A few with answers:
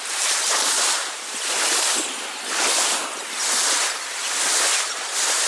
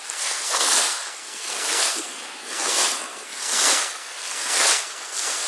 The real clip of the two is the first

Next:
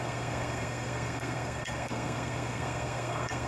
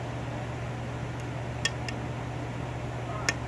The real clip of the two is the second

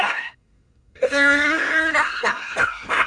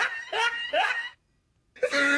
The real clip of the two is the second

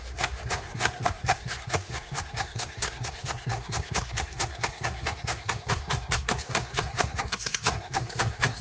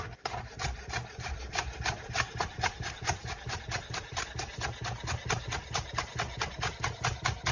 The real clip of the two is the second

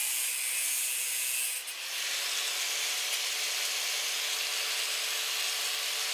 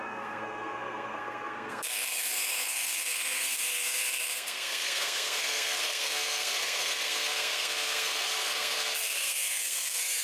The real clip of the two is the first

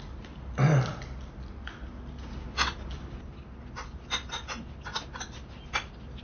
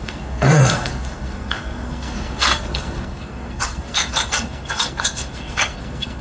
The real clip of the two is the first